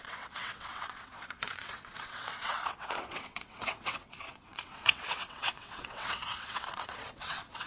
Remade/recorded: remade